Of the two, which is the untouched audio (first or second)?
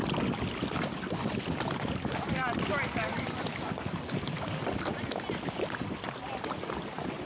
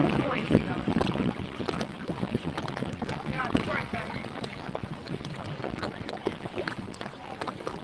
first